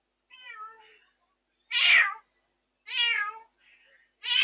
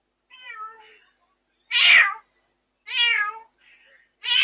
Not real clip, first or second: first